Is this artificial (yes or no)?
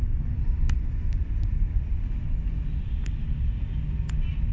no